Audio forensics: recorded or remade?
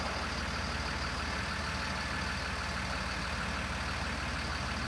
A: recorded